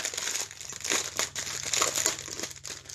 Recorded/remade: recorded